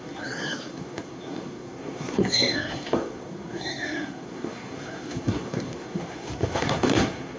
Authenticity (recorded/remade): remade